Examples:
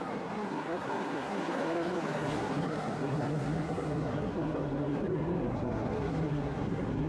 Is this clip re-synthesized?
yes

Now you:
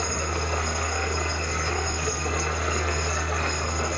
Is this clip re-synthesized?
yes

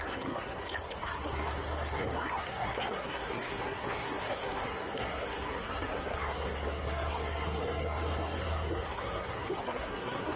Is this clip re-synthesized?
yes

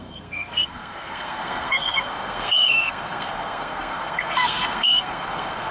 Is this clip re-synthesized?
yes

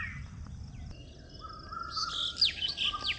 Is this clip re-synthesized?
no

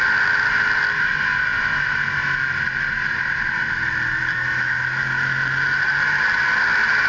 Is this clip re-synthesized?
no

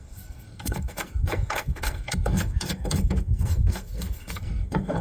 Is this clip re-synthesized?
yes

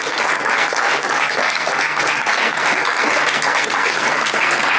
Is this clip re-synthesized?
yes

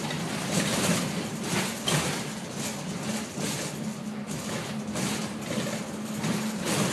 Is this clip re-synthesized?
no